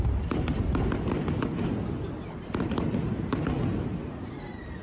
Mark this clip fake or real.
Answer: real